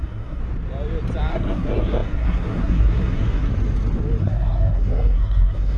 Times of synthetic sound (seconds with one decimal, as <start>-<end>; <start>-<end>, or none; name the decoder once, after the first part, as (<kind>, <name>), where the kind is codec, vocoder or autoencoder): 0.0-0.4 (codec, SNAC); 1.3-3.5; 4.2-5.8